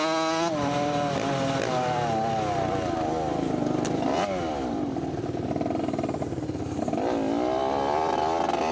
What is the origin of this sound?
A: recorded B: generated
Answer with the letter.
A